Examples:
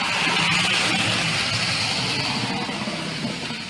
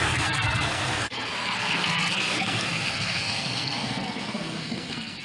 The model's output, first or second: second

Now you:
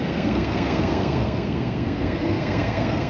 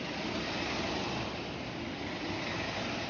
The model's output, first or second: first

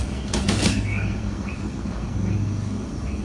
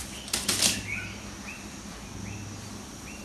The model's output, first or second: first